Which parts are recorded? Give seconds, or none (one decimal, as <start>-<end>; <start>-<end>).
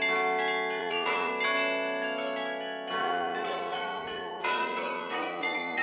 0.0-0.8; 1.3-3.0